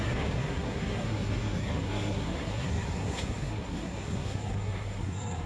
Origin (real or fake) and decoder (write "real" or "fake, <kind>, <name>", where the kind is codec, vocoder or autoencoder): fake, codec, SNAC